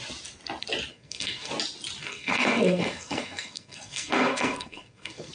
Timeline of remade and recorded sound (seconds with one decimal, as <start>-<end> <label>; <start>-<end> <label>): 0.0-0.9 recorded; 0.9-1.5 remade; 1.5-2.0 recorded; 2.0-5.3 remade